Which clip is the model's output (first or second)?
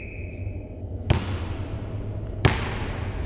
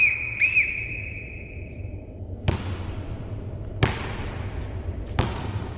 second